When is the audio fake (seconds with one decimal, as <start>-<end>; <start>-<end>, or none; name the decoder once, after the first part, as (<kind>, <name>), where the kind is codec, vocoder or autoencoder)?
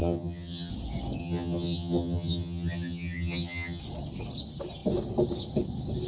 0.0-0.7 (vocoder, HiFi-GAN); 1.2-3.8